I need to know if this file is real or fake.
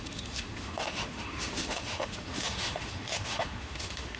fake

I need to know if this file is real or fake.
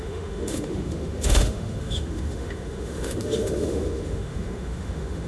fake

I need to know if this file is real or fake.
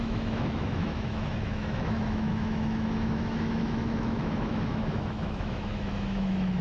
fake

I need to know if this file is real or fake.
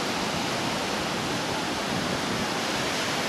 real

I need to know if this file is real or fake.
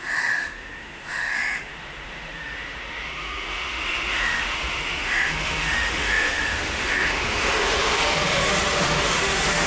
fake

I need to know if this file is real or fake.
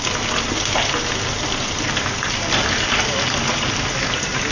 real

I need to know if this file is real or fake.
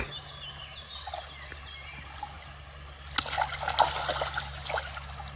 real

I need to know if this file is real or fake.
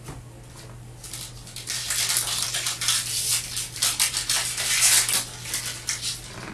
real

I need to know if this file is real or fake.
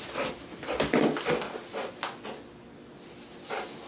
real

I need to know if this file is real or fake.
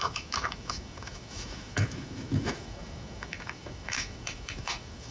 fake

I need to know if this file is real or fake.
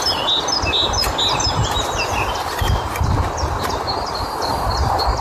real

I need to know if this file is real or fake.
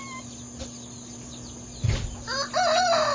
real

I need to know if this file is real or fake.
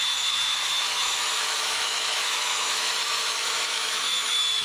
fake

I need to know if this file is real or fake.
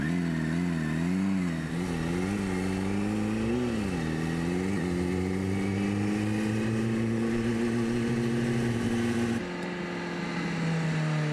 real